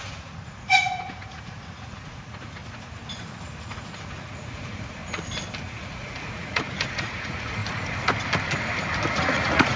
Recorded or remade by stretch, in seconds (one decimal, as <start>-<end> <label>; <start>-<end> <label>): 0.0-2.6 remade; 2.6-3.6 recorded; 3.6-5.0 remade; 5.0-5.6 recorded; 5.6-7.6 remade; 7.6-9.1 recorded; 9.1-9.8 remade